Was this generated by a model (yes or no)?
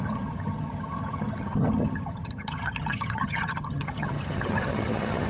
yes